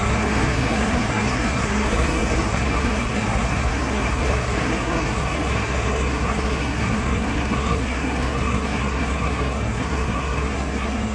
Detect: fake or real fake